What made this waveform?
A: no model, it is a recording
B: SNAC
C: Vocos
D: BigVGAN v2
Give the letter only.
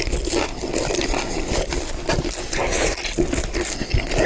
A